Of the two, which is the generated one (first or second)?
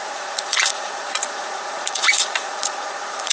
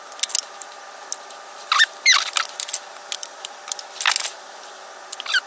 first